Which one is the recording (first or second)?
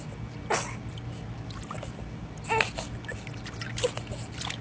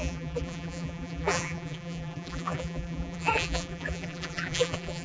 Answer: first